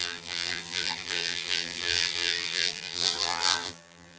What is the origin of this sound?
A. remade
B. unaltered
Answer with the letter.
A